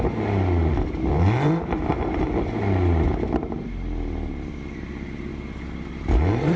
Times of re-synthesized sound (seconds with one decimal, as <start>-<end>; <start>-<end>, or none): 0.0-5.3; 5.9-6.6